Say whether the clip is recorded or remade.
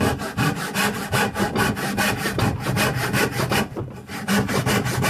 recorded